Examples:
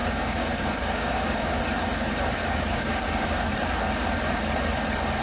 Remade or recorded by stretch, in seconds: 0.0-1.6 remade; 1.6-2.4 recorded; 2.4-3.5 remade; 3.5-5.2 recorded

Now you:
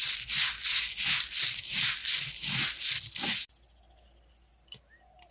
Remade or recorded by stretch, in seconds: 0.0-5.3 recorded

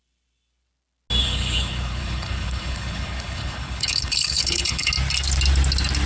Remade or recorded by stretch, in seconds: 0.0-1.2 recorded; 1.2-4.9 remade; 4.9-6.1 recorded